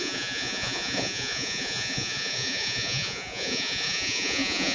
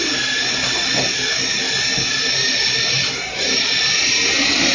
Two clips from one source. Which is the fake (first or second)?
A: first